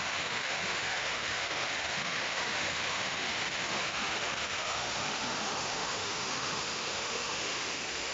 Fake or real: fake